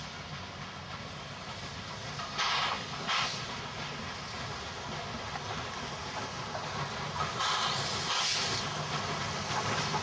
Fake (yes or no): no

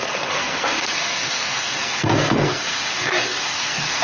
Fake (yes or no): yes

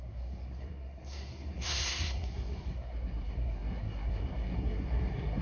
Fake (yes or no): yes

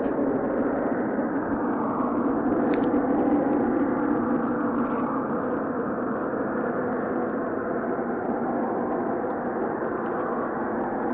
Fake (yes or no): no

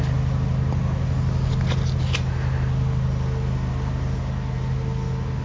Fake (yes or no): no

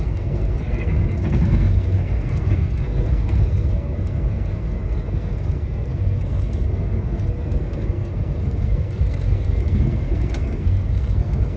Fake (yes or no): yes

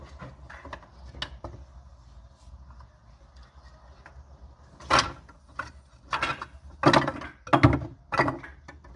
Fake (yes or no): no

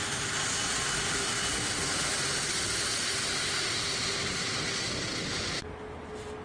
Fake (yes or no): no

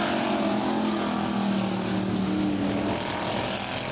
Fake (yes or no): no